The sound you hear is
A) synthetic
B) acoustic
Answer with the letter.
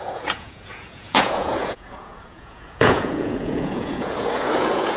A